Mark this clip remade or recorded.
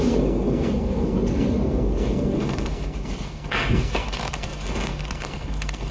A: remade